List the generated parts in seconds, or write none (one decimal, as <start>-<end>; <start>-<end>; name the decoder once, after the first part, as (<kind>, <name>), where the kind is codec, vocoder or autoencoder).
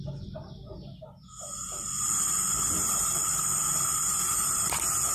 none